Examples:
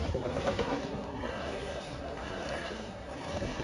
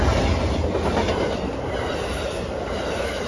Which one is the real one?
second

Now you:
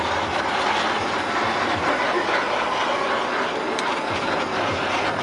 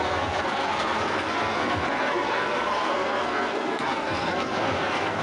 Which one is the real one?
first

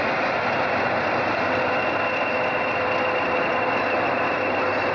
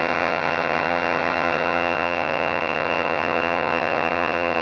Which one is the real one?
first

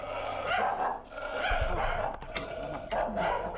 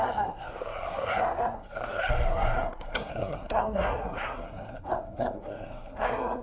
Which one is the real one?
first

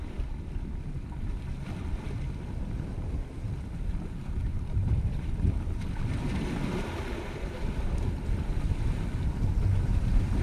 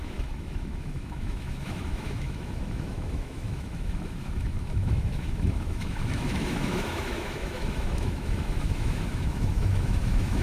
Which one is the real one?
first